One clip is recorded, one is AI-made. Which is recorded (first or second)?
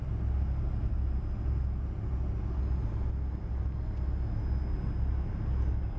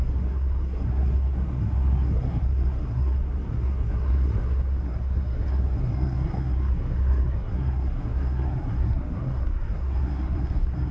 first